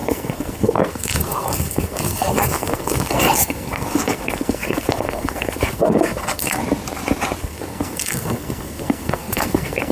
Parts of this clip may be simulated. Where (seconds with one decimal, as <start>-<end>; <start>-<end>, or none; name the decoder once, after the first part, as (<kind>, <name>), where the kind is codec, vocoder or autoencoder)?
0.0-6.6 (codec, SNAC); 7.4-9.9